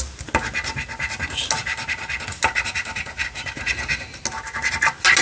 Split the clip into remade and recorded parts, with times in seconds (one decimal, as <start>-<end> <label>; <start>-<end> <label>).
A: 0.0-5.2 recorded